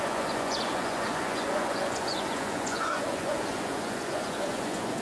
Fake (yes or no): yes